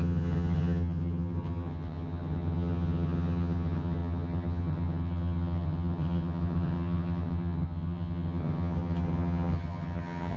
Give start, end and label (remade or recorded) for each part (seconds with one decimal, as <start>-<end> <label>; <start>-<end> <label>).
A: 0.0-10.4 remade